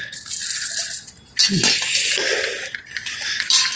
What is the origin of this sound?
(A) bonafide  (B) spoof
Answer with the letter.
A